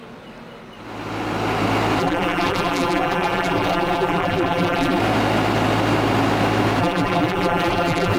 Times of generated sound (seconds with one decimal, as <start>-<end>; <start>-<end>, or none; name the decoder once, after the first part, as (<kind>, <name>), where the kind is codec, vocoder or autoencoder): 2.0-5.0 (vocoder, BigVGAN v2); 6.8-8.2